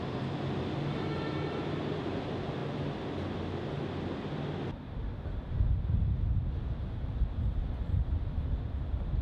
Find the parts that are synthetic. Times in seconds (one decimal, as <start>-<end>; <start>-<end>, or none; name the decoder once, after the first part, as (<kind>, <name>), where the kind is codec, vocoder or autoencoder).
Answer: none